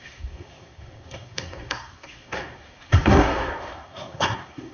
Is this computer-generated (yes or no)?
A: yes